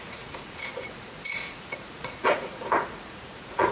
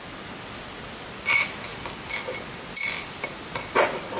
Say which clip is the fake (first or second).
first